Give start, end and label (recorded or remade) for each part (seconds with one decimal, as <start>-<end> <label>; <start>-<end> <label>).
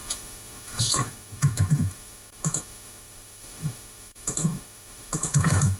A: 0.0-5.8 remade